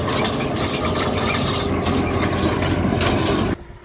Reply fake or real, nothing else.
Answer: real